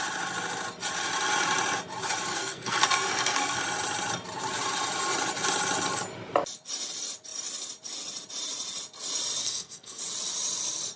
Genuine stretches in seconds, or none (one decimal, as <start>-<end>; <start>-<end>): 0.0-2.3; 3.6-9.4; 10.0-11.0